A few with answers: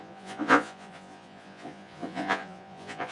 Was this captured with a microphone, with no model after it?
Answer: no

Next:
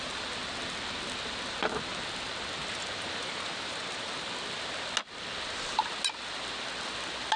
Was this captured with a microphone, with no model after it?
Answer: yes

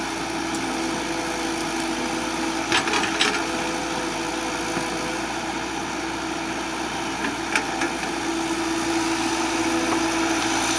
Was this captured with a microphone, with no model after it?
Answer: yes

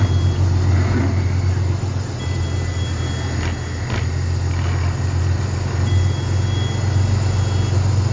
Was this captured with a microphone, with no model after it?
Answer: yes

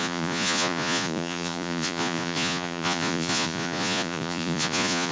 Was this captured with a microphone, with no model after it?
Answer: no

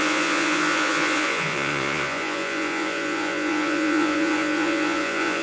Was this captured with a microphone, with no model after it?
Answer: no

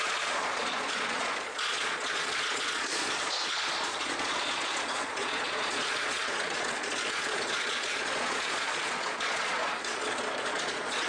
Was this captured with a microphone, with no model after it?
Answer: no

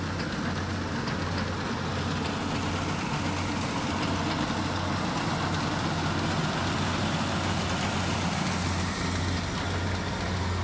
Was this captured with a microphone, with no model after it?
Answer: yes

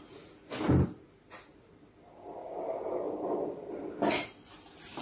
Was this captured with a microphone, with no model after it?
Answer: yes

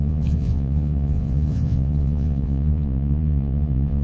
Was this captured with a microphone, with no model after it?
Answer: no